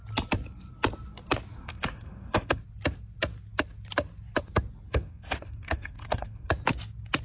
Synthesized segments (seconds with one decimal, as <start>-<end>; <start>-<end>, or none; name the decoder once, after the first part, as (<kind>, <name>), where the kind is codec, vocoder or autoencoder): 1.5-2.6 (codec, SNAC); 4.9-6.5